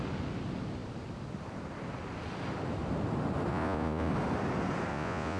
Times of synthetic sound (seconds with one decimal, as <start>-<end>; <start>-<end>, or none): 3.5-4.1; 4.9-5.4